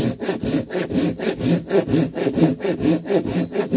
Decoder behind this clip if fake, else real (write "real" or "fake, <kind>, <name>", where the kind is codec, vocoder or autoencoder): real